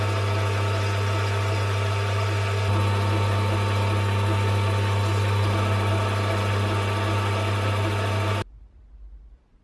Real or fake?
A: real